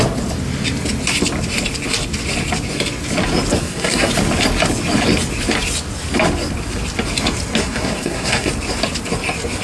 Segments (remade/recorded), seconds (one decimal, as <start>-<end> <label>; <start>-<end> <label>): 0.0-3.6 recorded; 3.6-4.1 remade; 4.1-7.6 recorded; 7.6-8.5 remade; 8.5-9.6 recorded